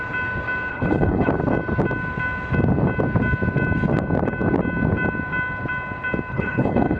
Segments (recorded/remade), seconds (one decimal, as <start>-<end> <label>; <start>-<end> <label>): 0.0-0.7 recorded; 0.7-1.3 remade; 1.3-6.3 recorded; 6.3-7.0 remade